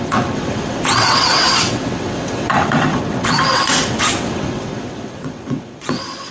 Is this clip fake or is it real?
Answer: fake